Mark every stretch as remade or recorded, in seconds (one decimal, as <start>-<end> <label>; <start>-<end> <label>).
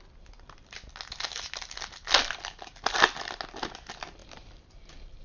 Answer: 0.0-5.2 recorded